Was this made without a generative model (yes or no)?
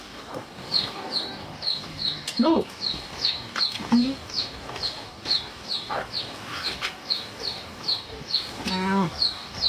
no